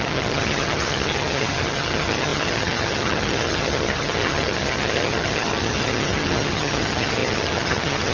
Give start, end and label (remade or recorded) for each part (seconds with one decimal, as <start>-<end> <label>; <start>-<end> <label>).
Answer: 0.0-8.1 remade